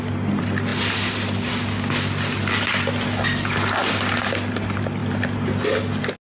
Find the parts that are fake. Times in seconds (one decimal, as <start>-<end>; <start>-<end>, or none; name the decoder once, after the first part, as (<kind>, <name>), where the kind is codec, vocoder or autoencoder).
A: none

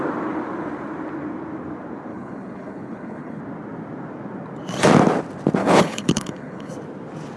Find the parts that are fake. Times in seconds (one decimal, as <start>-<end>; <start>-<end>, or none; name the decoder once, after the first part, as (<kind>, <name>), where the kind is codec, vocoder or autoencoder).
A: 2.1-3.4 (codec, HILCodec); 5.6-6.7

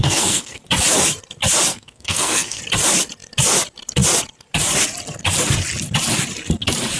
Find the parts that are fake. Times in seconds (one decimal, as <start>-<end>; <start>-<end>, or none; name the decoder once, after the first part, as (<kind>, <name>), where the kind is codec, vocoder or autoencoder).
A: 0.0-0.6 (codec, SNAC); 1.7-2.6

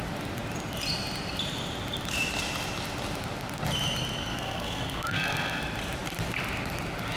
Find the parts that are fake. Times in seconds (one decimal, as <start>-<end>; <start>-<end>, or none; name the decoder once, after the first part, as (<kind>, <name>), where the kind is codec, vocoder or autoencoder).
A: 4.3-5.6 (codec, SNAC)